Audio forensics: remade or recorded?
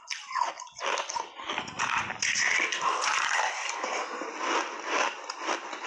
recorded